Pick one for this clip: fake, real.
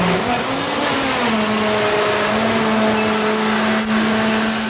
real